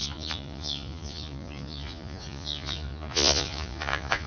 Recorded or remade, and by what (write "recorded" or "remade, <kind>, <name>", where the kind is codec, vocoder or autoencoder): remade, vocoder, Vocos